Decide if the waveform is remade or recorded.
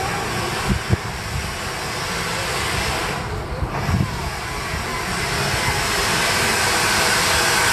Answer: recorded